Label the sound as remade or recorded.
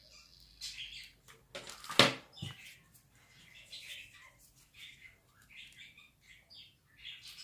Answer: recorded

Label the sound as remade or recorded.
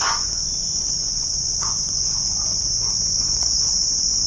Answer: remade